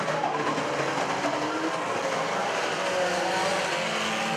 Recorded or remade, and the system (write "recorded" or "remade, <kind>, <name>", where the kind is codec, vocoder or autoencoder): recorded